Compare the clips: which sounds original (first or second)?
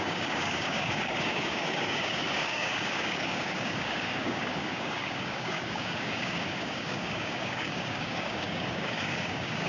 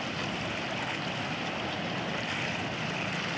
second